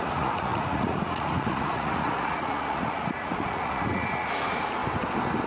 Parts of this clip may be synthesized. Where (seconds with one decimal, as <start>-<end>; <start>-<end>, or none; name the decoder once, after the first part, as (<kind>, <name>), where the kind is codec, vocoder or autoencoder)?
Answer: 0.0-4.8 (vocoder, Vocos)